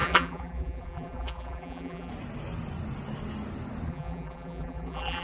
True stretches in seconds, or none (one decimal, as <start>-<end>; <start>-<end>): 2.1-3.9